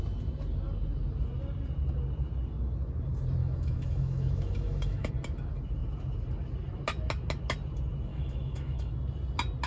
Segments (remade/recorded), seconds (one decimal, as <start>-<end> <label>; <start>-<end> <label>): 0.0-3.4 recorded; 3.4-5.1 remade; 5.1-8.1 recorded; 8.1-8.9 remade; 8.9-9.7 recorded